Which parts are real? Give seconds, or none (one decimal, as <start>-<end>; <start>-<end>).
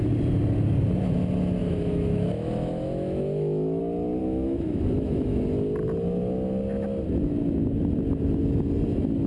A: 0.0-1.6; 3.8-4.2; 5.4-9.3